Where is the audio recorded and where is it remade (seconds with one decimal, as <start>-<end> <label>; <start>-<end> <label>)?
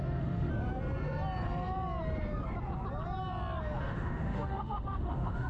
0.0-0.5 remade; 0.5-3.8 recorded; 3.8-5.5 remade